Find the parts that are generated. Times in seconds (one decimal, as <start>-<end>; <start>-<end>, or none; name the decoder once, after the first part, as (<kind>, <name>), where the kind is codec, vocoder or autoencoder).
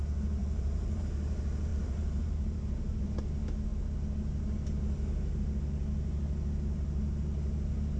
0.4-1.1 (vocoder, BigVGAN v2); 1.7-3.0